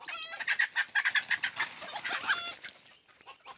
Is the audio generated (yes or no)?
no